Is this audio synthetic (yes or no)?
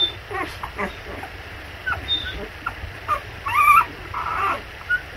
no